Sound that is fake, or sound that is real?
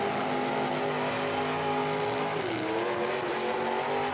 real